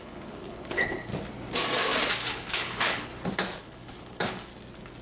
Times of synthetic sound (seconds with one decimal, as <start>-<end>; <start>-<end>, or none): 0.0-1.1; 2.3-3.1; 3.6-4.5